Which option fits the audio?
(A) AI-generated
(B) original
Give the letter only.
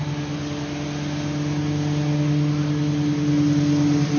B